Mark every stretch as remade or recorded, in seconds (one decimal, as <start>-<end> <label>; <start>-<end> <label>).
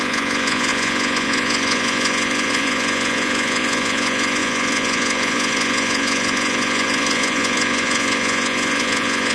0.0-9.3 remade